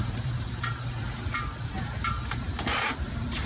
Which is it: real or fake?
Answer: fake